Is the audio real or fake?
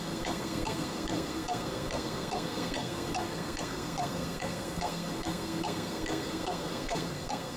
fake